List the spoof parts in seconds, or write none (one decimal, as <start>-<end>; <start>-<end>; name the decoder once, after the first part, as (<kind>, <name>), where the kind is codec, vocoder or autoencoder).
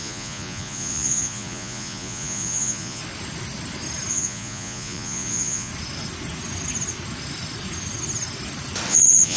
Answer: 0.0-3.0 (vocoder, Vocos); 4.1-5.7; 8.9-9.4